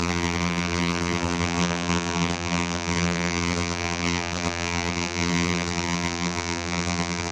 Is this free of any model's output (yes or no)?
no